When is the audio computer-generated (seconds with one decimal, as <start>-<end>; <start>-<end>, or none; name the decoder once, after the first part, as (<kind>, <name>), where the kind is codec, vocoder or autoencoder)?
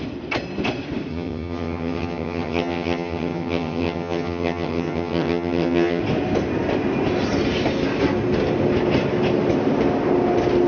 1.1-6.0 (vocoder, HiFi-GAN)